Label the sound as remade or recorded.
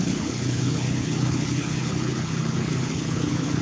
remade